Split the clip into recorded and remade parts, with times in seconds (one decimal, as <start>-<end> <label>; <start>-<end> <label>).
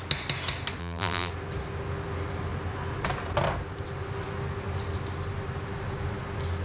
0.0-0.8 recorded; 0.8-1.3 remade; 1.3-6.6 recorded